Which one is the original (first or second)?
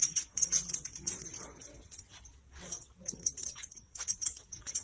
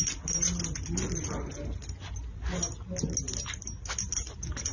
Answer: second